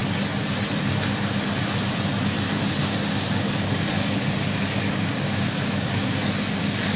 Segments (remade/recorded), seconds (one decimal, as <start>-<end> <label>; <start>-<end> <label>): 0.0-3.1 recorded; 3.1-7.0 remade